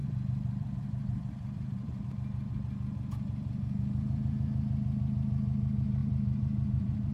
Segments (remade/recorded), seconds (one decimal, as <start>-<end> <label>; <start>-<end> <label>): 0.0-2.5 remade; 2.5-6.0 recorded; 6.0-7.1 remade